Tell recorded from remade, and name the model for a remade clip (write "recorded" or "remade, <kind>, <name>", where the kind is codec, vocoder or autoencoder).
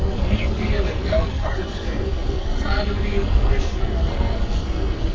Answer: remade, codec, SNAC